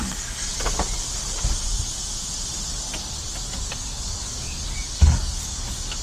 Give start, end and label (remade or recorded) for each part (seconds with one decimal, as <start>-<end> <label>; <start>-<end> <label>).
0.0-0.5 remade; 0.5-3.4 recorded; 3.4-6.0 remade